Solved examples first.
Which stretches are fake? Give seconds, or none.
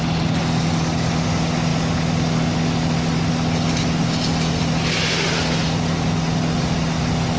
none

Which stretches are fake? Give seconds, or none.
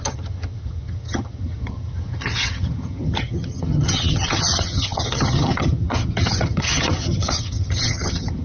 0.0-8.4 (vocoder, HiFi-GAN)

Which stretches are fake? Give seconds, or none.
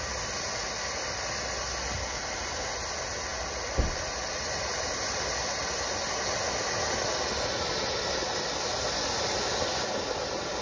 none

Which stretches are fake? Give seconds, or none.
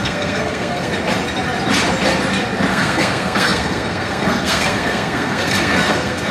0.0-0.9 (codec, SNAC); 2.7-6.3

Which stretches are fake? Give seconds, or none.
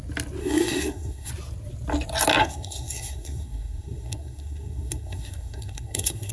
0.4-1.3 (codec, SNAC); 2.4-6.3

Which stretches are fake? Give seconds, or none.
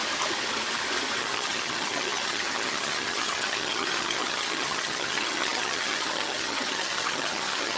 1.2-7.8 (vocoder, HiFi-GAN)